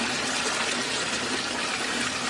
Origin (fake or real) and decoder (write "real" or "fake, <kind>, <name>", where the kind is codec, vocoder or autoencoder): real